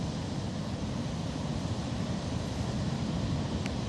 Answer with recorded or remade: remade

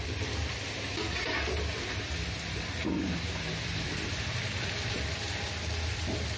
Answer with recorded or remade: remade